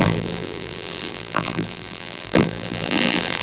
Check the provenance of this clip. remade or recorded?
remade